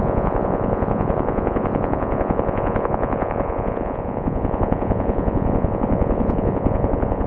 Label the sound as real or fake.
fake